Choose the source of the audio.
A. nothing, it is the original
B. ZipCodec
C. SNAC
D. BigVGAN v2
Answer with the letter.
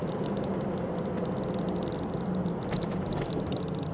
D